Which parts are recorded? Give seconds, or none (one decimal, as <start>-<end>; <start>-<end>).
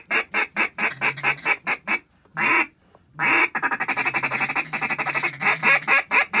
0.0-6.4